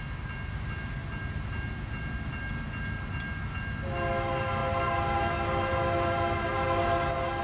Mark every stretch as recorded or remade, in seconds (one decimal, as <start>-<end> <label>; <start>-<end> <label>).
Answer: 0.0-7.4 recorded